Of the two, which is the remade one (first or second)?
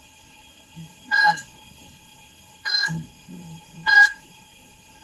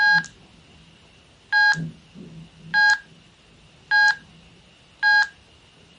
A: first